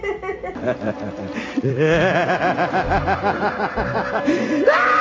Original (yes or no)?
no